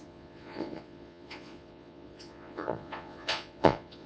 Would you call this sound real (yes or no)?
no